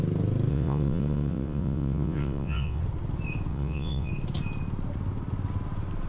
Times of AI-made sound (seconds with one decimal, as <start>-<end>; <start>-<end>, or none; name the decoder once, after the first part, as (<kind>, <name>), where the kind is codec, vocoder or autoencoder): 0.5-2.8 (vocoder, WaveNeXt); 3.5-4.1